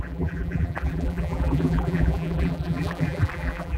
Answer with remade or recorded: remade